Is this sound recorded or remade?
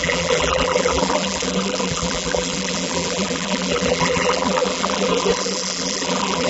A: remade